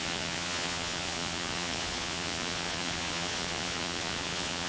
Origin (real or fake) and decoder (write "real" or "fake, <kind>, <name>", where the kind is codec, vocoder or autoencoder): fake, vocoder, Vocos